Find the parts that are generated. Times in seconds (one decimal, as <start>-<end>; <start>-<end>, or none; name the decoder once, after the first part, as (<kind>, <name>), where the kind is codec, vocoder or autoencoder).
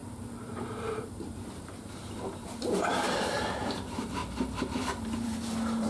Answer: 0.0-4.2 (vocoder, BigVGAN v2); 4.7-5.9